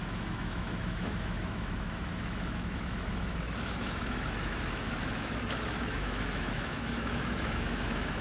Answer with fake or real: fake